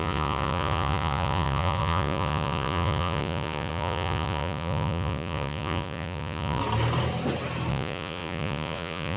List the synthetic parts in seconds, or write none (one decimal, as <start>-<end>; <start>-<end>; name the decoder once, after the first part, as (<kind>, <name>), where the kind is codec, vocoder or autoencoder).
0.0-6.6 (vocoder, Vocos); 7.7-9.2